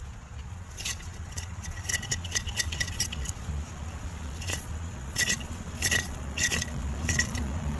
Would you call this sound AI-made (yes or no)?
yes